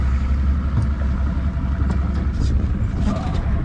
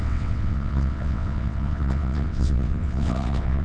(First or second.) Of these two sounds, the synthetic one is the second